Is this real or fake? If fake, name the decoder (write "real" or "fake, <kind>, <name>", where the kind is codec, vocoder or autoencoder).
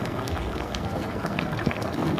fake, codec, SNAC